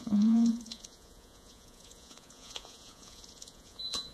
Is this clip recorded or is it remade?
remade